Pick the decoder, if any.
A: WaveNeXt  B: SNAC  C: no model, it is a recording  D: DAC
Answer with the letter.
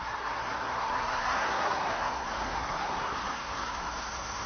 B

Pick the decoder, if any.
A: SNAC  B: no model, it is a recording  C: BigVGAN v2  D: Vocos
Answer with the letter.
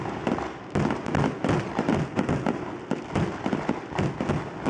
B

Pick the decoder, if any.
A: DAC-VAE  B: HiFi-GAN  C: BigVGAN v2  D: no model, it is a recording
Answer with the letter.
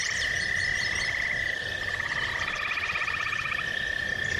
C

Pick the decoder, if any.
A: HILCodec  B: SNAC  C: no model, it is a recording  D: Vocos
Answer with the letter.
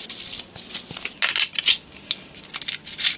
C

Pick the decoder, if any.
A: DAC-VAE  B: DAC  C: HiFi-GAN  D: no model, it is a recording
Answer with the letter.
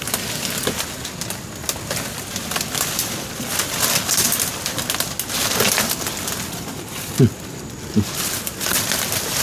D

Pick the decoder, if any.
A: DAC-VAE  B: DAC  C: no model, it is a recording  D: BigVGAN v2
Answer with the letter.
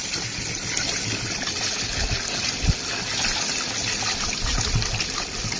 C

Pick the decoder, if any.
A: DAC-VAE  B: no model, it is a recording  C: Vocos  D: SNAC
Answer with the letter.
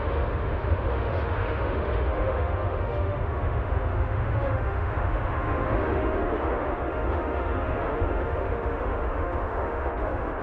A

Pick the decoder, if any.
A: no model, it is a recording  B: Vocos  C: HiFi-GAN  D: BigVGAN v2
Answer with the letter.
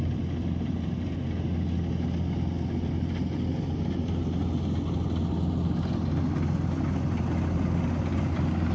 A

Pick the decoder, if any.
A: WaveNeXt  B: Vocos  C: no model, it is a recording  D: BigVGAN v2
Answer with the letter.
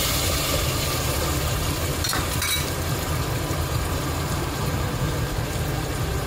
D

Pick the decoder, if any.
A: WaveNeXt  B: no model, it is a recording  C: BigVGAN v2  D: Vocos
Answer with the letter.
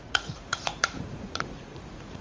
D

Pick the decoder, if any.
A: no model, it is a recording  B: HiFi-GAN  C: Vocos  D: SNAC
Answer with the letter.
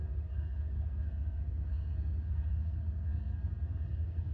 D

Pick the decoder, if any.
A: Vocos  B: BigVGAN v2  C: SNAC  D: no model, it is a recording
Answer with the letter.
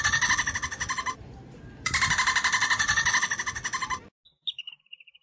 D